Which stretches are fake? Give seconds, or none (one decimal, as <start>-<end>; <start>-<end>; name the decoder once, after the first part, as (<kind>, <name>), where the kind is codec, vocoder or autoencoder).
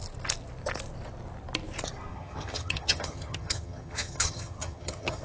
2.1-5.2 (vocoder, HiFi-GAN)